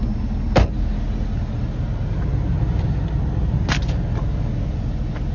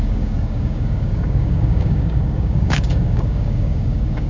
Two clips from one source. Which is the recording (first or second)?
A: first